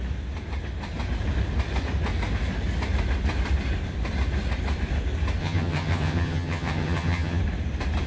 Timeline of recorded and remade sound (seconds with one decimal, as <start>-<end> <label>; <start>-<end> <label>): 0.0-5.4 recorded; 5.4-7.4 remade; 7.4-8.1 recorded